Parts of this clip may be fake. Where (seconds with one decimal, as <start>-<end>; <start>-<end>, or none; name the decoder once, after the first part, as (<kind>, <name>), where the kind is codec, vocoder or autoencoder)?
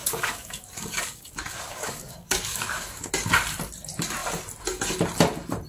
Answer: 0.0-3.1 (codec, DAC)